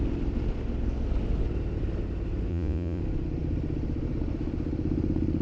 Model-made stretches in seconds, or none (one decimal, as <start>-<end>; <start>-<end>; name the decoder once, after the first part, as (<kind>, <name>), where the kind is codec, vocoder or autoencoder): 2.5-3.0 (vocoder, Vocos)